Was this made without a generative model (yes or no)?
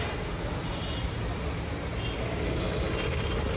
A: yes